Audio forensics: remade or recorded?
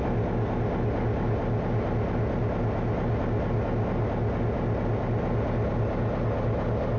recorded